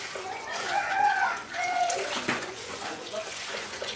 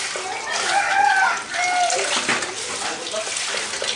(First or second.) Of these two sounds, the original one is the second